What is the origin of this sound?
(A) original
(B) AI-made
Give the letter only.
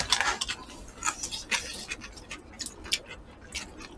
A